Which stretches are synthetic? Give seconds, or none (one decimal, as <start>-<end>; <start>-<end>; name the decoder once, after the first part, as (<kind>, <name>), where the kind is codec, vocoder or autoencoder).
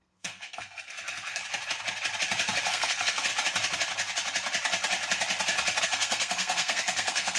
0.0-1.4 (codec, SNAC); 2.7-3.3; 5.8-7.4